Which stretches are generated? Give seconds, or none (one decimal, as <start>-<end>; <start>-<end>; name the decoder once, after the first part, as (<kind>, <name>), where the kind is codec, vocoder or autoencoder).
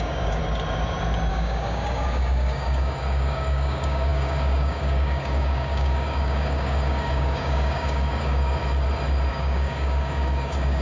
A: 0.0-0.4 (codec, DAC); 1.3-8.6; 9.3-10.8